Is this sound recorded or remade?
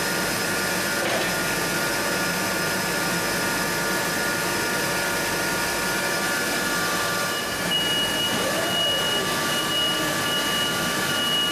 recorded